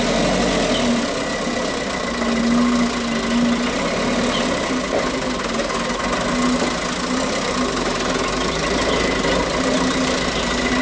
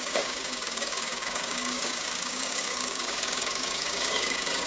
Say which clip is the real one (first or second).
first